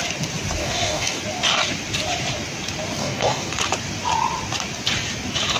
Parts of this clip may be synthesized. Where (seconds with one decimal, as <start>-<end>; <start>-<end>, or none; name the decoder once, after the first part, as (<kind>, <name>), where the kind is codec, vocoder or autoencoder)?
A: 0.6-1.2 (codec, DAC); 3.0-3.5